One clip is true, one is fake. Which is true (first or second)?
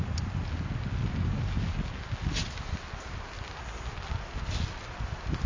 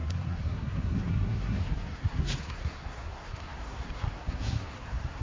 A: first